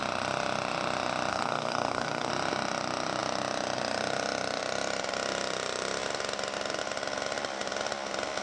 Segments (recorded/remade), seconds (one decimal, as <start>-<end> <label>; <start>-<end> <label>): 0.0-1.3 recorded; 1.3-2.3 remade; 2.3-8.4 recorded